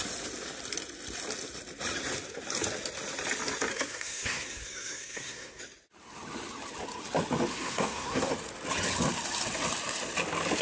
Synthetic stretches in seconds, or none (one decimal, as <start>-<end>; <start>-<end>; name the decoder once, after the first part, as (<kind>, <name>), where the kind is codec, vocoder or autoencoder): 3.7-5.6 (codec, SNAC); 7.5-8.3